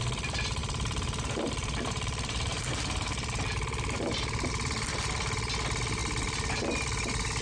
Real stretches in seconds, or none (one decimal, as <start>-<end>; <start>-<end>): 0.0-0.6; 4.5-7.4